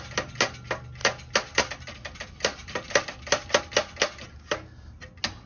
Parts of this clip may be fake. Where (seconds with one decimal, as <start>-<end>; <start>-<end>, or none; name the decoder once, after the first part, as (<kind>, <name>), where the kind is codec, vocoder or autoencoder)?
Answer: none